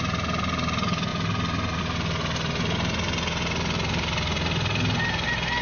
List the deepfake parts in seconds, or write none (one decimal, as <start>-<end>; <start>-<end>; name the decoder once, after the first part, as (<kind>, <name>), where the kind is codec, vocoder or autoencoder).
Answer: none